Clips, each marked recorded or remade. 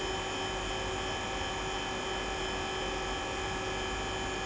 recorded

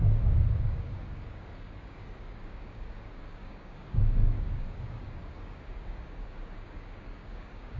remade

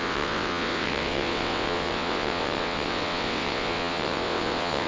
remade